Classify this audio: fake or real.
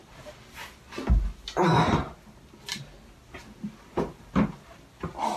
real